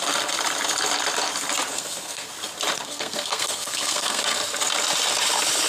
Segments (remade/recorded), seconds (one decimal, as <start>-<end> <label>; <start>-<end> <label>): 0.0-1.7 recorded; 1.7-2.3 remade; 2.3-2.8 recorded; 2.8-4.2 remade; 4.2-5.7 recorded